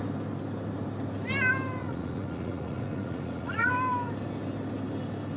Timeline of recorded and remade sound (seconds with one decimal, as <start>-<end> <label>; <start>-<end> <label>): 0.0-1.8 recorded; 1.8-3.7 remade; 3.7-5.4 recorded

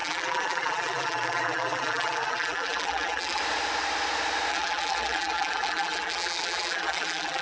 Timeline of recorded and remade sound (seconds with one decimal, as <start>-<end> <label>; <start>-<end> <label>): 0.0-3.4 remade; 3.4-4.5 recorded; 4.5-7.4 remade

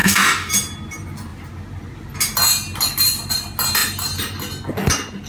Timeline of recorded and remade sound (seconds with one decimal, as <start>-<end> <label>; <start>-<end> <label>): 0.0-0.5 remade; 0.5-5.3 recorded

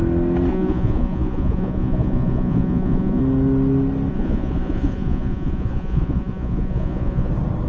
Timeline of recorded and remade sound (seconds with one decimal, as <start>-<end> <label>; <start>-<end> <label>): 0.0-0.5 recorded; 0.5-3.2 remade; 3.2-4.1 recorded; 4.1-7.3 remade; 7.3-7.7 recorded

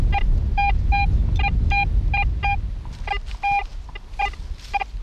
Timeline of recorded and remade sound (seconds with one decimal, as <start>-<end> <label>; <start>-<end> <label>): 0.0-5.0 recorded

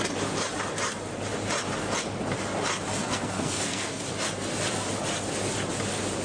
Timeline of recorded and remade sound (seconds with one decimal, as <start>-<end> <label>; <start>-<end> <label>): 0.0-3.0 recorded; 3.0-4.0 remade; 4.0-6.2 recorded

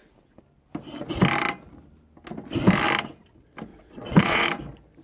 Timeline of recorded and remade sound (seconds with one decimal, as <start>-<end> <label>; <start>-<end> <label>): 0.0-3.7 recorded; 3.7-4.5 remade; 4.5-5.0 recorded